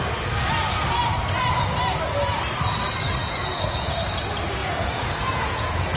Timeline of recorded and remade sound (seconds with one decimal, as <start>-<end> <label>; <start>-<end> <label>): 0.0-3.2 recorded; 3.2-3.9 remade; 3.9-4.6 recorded; 4.6-6.0 remade